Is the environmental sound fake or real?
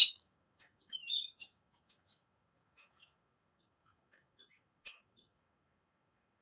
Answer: fake